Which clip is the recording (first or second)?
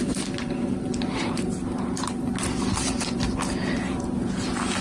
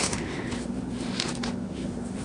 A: first